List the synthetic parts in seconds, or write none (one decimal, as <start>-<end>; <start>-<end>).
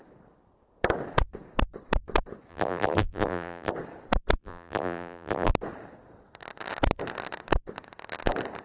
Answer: 2.5-3.7; 4.4-5.5